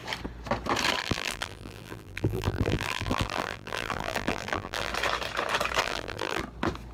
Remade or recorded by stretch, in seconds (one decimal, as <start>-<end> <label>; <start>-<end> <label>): 0.0-1.0 recorded; 1.0-4.9 remade; 4.9-5.8 recorded; 5.8-6.4 remade; 6.4-6.9 recorded